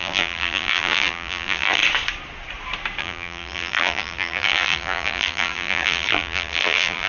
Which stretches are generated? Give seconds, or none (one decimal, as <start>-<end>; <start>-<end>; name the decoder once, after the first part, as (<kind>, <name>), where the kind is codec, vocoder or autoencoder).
0.0-1.8 (vocoder, BigVGAN v2); 3.0-7.1